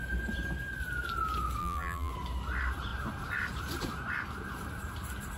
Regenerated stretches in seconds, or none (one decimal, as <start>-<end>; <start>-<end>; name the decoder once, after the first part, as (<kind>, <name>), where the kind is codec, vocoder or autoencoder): 1.6-2.1 (vocoder, BigVGAN v2)

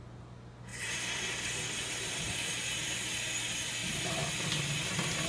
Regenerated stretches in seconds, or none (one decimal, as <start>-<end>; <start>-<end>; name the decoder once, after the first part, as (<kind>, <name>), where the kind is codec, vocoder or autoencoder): 0.7-2.2 (vocoder, BigVGAN v2); 3.8-5.3

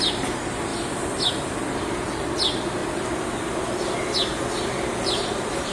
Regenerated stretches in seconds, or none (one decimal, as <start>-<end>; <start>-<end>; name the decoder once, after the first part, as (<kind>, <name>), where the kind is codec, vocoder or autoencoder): 0.0-0.7 (vocoder, BigVGAN v2); 1.7-2.8; 5.0-5.7

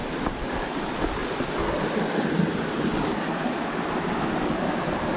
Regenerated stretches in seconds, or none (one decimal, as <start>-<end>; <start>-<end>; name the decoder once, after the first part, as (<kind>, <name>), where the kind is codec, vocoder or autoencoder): 0.0-0.6 (vocoder, BigVGAN v2)

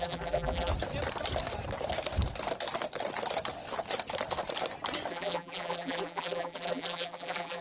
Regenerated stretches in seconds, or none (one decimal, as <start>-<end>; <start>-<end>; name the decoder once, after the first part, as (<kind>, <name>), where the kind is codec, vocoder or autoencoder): 0.0-0.7 (vocoder, BigVGAN v2); 5.1-7.6

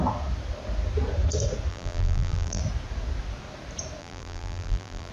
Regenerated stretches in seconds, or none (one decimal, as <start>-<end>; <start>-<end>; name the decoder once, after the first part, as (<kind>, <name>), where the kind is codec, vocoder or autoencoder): 1.7-2.6 (vocoder, BigVGAN v2); 4.0-5.1